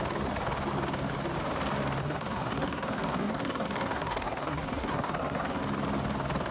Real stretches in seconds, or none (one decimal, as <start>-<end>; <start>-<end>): 0.0-2.0; 5.6-6.5